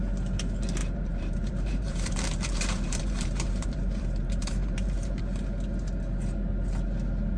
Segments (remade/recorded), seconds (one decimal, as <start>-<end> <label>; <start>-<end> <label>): 0.0-0.8 recorded; 0.8-5.2 remade; 5.2-7.4 recorded